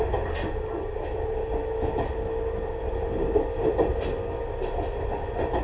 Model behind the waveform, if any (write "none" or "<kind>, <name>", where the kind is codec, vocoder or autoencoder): none